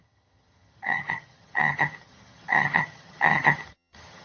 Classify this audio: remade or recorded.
remade